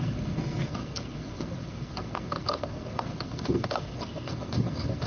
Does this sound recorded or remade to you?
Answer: remade